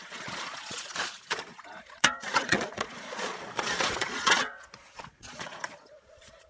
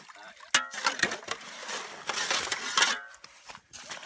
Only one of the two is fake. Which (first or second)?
first